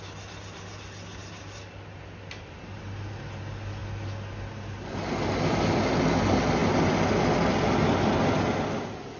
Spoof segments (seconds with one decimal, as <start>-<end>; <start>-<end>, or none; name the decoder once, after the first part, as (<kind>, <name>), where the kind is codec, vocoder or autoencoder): none